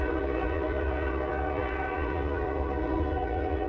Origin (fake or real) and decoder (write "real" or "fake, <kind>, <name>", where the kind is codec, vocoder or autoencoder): fake, vocoder, Vocos